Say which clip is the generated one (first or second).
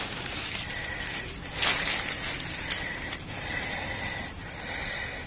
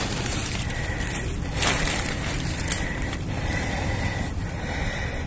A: second